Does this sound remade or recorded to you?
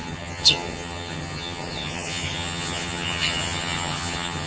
remade